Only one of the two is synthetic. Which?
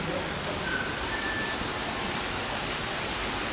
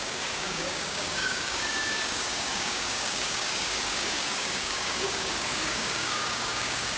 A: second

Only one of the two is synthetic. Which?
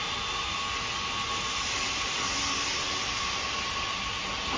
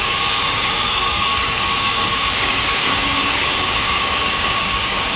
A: second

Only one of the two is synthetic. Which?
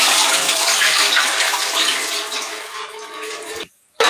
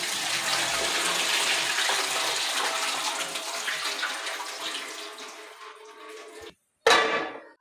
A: first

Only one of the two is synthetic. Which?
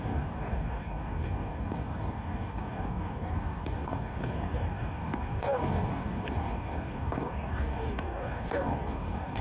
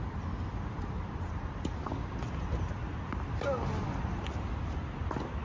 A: first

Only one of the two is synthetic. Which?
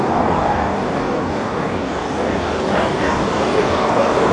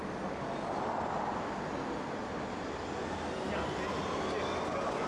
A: first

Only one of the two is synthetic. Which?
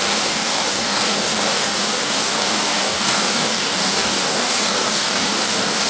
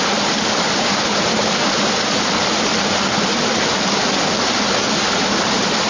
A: first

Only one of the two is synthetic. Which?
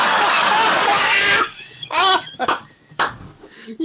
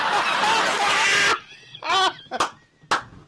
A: first